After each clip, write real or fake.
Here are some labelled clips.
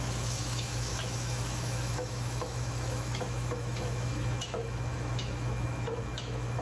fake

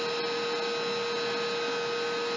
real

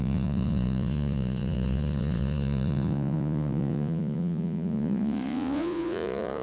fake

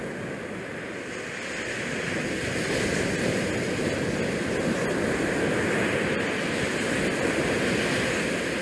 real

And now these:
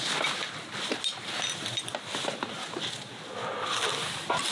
real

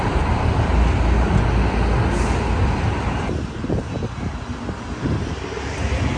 real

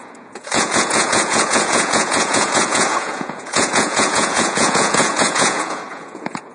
fake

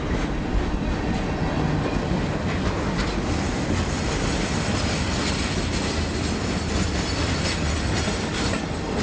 real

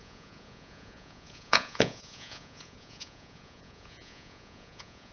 fake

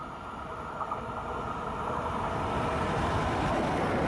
real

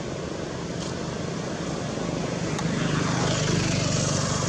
real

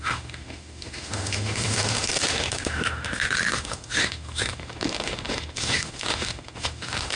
fake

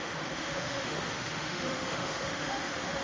fake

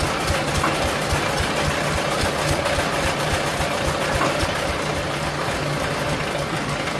real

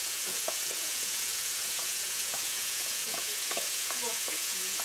fake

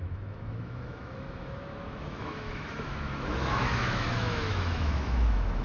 fake